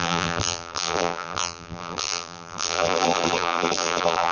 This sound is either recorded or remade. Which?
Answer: remade